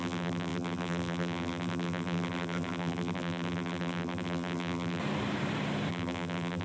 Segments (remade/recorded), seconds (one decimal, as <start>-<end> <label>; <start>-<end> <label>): 0.0-5.0 remade; 5.0-5.9 recorded; 5.9-6.6 remade